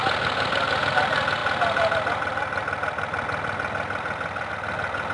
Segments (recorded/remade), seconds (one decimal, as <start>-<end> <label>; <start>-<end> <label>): 0.0-5.1 recorded